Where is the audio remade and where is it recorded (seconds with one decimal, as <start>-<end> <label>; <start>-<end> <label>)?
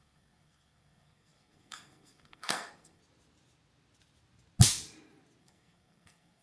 0.0-3.0 remade; 3.0-5.4 recorded; 5.4-6.4 remade